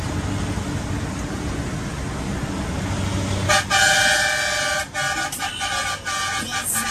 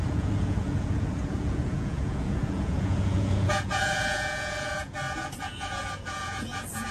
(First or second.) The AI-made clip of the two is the second